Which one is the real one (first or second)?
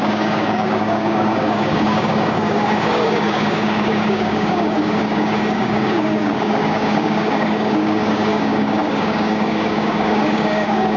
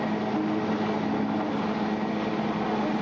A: second